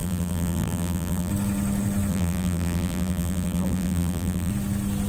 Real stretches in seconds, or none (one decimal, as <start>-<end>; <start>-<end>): 1.3-2.1; 4.5-5.1